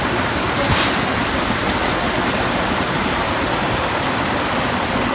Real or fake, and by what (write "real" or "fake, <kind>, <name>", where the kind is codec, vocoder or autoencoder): real